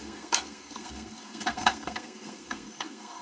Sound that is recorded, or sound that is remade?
remade